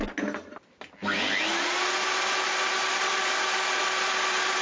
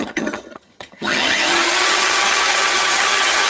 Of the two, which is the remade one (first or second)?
second